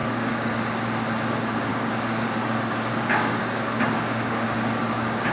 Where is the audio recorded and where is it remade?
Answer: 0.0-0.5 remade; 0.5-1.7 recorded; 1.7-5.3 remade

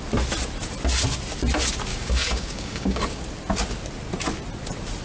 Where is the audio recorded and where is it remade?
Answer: 0.0-1.9 recorded; 1.9-3.2 remade; 3.2-5.0 recorded

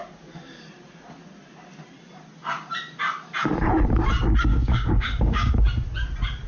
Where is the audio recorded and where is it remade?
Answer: 0.0-4.5 recorded; 4.5-5.5 remade; 5.5-6.5 recorded

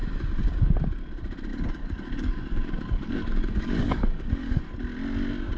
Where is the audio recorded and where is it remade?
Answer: 0.0-1.5 recorded; 1.5-4.6 remade; 4.6-5.6 recorded